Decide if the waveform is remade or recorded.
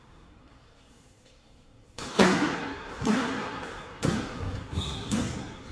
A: remade